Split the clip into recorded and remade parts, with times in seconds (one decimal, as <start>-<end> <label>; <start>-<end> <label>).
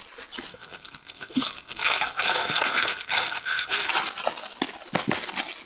0.0-0.5 recorded; 0.5-3.9 remade; 3.9-5.7 recorded